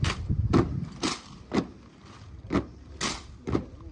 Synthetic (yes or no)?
no